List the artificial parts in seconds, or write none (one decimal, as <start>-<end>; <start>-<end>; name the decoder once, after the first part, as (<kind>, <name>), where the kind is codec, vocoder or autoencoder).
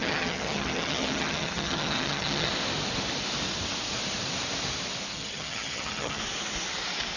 0.0-2.5 (vocoder, HiFi-GAN); 5.1-6.2